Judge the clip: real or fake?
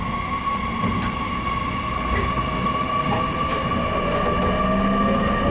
real